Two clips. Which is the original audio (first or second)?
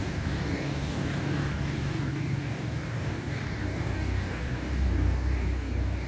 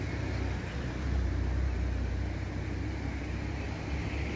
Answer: second